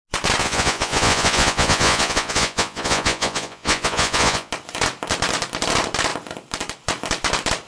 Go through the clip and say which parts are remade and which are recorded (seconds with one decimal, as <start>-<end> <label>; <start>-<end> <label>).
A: 0.0-0.4 recorded; 0.4-4.5 remade; 4.5-7.7 recorded